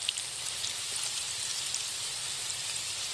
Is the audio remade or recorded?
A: recorded